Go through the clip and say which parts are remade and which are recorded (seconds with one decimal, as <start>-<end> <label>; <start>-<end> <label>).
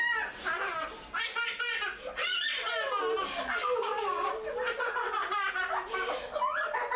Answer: 0.0-3.6 recorded; 3.6-4.3 remade; 4.3-7.0 recorded